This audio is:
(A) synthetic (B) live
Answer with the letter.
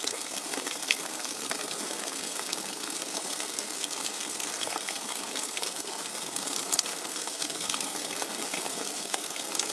A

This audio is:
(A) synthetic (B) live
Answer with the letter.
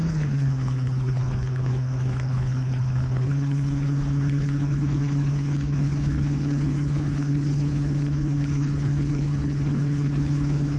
A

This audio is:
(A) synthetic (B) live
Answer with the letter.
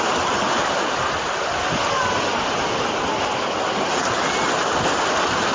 B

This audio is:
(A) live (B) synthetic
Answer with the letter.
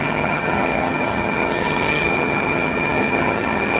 B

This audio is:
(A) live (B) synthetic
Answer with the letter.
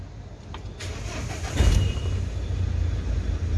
A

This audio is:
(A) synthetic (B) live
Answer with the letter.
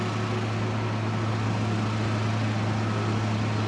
B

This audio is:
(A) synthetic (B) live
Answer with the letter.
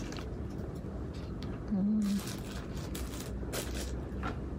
B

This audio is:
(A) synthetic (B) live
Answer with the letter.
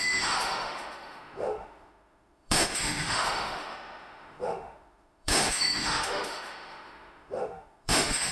A